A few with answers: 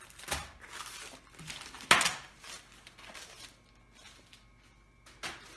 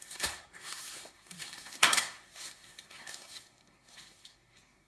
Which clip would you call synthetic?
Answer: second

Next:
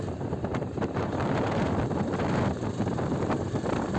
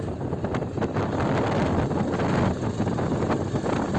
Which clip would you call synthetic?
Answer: first